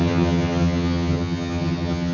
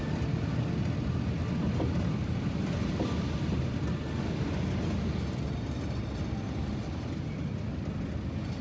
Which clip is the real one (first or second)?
second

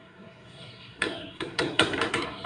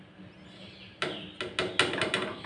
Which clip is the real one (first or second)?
second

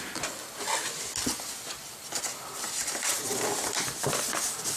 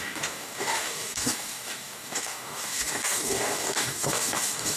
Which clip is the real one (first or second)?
first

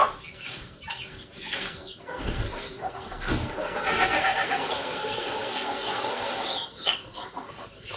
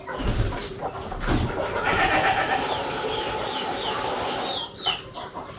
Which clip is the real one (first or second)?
second